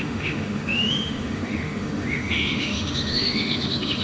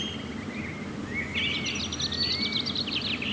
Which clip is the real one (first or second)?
second